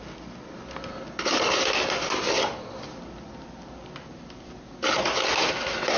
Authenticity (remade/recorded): recorded